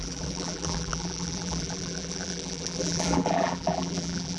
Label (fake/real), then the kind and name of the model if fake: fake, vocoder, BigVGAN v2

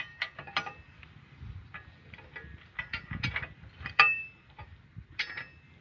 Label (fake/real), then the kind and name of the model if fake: fake, vocoder, BigVGAN v2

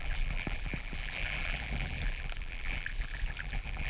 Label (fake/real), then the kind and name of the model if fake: fake, vocoder, BigVGAN v2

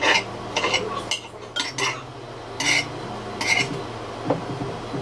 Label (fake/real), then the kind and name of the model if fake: real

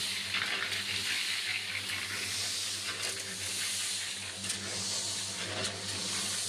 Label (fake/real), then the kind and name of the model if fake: real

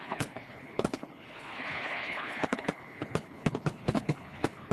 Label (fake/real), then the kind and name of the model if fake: fake, codec, HILCodec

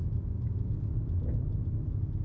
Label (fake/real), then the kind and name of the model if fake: real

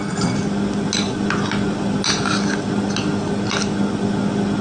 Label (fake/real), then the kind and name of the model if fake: real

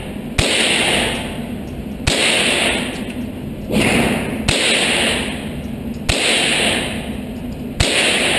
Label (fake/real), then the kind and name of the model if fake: real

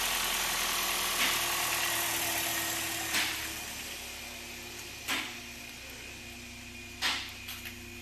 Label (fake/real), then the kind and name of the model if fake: real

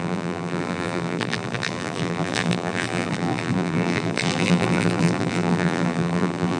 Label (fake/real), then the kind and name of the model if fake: fake, vocoder, BigVGAN v2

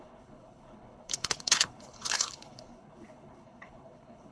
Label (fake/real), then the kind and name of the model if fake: fake, codec, HILCodec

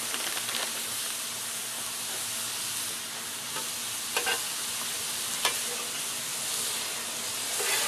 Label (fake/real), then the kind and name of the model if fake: real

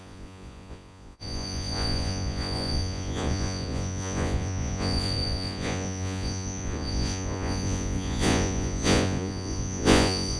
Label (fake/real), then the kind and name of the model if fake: fake, vocoder, Vocos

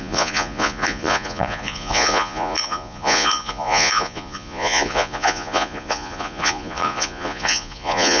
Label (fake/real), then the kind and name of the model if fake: fake, vocoder, Vocos